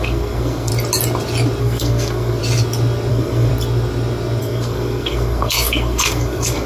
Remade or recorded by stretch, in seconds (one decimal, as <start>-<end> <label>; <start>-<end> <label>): 0.0-0.7 remade; 0.7-1.6 recorded; 1.6-2.4 remade; 2.4-3.1 recorded; 3.1-3.5 remade; 3.5-4.4 recorded; 4.4-6.7 remade